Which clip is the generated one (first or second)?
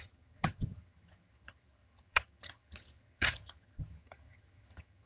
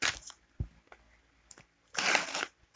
first